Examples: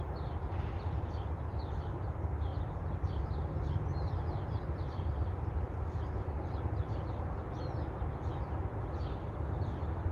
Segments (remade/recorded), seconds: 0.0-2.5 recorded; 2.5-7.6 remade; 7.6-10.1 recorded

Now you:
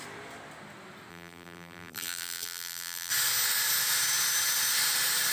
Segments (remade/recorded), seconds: 0.0-1.1 recorded; 1.1-3.1 remade; 3.1-5.3 recorded

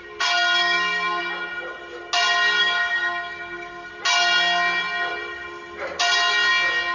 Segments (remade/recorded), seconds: 0.0-0.6 recorded; 0.6-1.2 remade; 1.2-2.6 recorded; 2.6-3.9 remade; 3.9-6.9 recorded

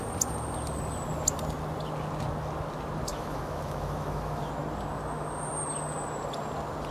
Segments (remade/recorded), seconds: 0.0-3.1 recorded; 3.1-4.5 remade; 4.5-6.9 recorded

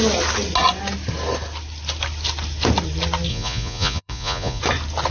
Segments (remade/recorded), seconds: 0.0-3.3 recorded; 3.3-4.6 remade; 4.6-5.1 recorded

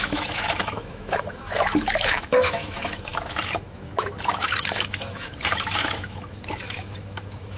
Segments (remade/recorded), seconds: 0.0-7.6 remade

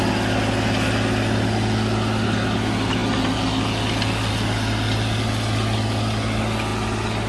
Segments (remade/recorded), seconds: 0.0-7.3 recorded

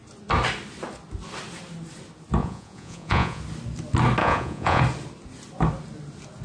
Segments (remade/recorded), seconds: 0.0-2.4 recorded; 2.4-3.4 remade; 3.4-4.2 recorded; 4.2-4.8 remade; 4.8-6.4 recorded